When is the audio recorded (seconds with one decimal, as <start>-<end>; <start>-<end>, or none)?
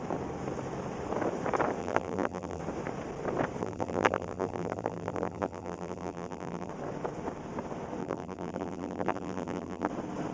0.0-1.8; 2.6-3.6; 6.7-8.0; 9.9-10.3